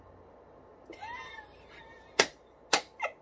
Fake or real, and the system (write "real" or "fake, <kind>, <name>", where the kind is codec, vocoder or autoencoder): real